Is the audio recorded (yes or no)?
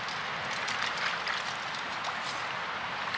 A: yes